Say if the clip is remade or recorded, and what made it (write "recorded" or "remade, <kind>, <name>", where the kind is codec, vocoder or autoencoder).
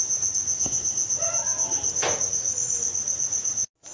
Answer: recorded